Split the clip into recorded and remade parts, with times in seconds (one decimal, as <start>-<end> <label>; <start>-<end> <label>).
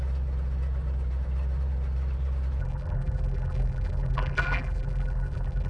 0.0-2.6 recorded; 2.6-5.7 remade